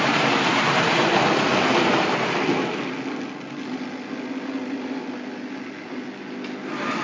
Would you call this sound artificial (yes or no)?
no